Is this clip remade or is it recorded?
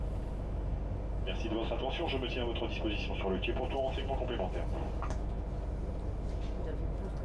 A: recorded